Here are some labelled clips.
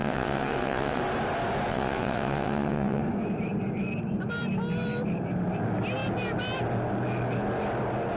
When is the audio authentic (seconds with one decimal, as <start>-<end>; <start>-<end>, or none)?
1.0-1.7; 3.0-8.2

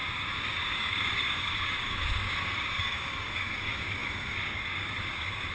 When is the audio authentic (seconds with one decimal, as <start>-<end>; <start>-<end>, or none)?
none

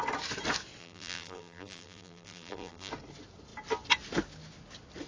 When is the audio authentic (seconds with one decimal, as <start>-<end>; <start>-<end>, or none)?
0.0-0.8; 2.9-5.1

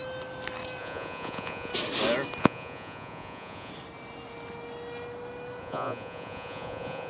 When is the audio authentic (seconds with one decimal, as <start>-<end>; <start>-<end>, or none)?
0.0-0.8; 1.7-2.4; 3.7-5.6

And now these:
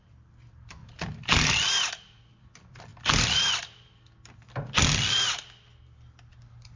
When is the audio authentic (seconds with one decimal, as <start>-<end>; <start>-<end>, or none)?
0.8-1.7; 2.9-6.8

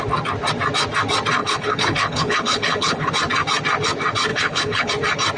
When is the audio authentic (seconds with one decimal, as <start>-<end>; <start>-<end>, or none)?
0.0-1.4; 3.1-4.3; 4.9-5.4

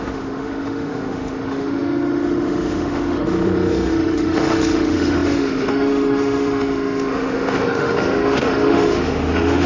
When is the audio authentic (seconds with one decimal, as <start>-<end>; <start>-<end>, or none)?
none